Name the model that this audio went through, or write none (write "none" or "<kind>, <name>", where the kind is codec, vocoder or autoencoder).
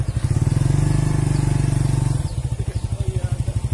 none